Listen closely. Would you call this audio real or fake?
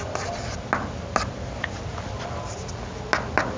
real